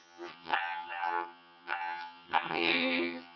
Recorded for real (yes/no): no